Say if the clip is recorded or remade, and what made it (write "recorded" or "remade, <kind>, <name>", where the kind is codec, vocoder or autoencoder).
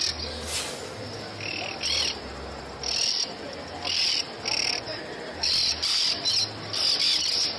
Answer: recorded